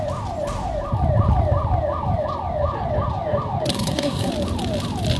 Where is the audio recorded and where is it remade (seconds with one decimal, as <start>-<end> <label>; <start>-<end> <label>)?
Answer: 0.0-3.7 recorded; 3.7-4.3 remade; 4.3-5.2 recorded